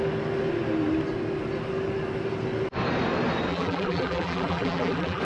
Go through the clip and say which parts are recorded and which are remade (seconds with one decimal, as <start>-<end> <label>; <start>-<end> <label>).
0.0-3.5 recorded; 3.5-5.2 remade